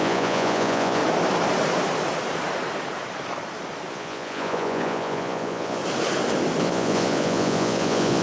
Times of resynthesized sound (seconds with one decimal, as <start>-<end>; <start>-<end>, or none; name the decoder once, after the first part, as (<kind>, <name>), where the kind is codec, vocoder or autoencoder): 0.0-1.0 (vocoder, Vocos); 3.9-5.8; 6.6-8.2